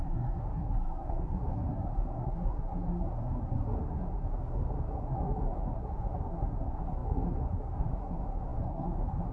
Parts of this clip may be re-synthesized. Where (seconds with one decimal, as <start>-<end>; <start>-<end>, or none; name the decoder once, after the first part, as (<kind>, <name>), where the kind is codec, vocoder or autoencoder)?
0.0-9.3 (codec, SNAC)